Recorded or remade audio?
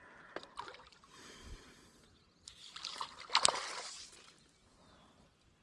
recorded